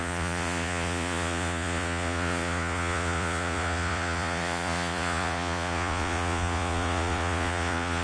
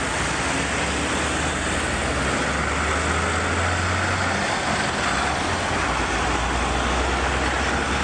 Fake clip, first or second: first